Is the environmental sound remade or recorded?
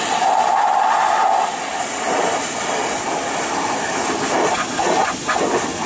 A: recorded